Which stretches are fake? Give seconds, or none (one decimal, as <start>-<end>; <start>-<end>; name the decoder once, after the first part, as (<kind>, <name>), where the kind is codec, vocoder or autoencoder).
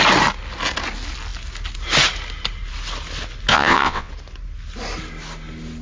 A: 3.5-4.1 (vocoder, WaveNeXt)